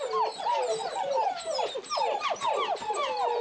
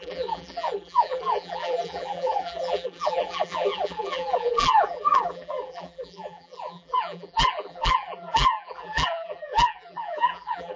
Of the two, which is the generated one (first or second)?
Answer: second